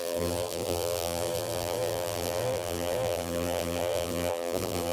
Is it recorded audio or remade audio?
remade